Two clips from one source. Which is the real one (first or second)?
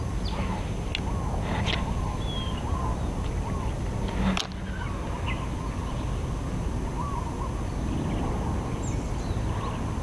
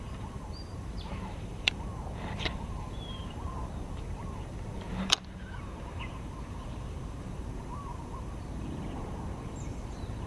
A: first